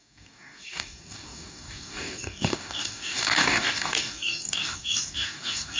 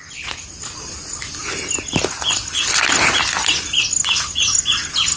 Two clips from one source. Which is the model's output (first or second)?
first